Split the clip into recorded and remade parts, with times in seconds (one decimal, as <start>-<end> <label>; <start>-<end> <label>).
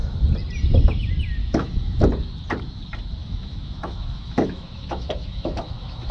0.0-1.4 recorded; 1.4-2.0 remade; 2.0-3.2 recorded; 3.2-6.1 remade